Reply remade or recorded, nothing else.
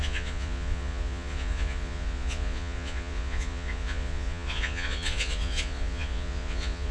remade